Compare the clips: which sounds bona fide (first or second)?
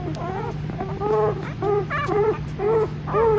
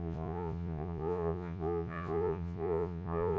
first